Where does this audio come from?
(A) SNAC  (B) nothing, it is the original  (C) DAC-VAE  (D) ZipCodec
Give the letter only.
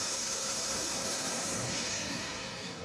A